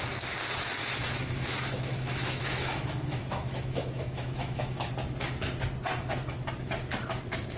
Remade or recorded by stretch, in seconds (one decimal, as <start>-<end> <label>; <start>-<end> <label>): 0.0-0.8 recorded; 0.8-4.9 remade; 4.9-7.6 recorded